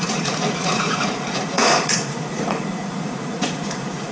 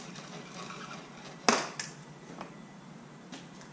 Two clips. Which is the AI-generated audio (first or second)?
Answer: first